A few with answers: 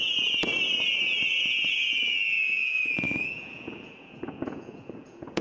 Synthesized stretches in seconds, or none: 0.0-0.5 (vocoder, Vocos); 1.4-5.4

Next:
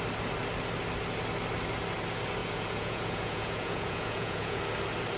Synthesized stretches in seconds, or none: 2.4-4.6 (vocoder, Vocos)

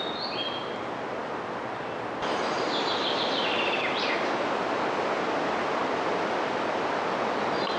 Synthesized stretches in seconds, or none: none